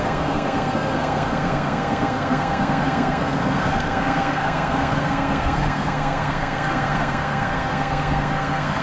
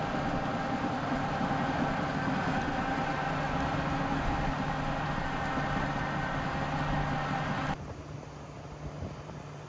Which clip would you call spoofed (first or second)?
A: first